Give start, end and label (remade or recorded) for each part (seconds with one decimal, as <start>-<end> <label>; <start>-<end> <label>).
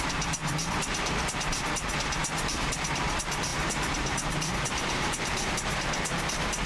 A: 0.0-6.7 remade